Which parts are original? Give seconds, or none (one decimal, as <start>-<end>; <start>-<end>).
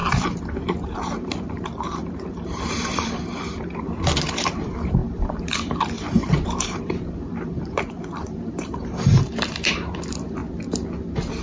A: 10.4-11.4